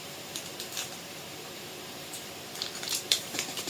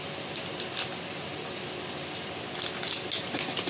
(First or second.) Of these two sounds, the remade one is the first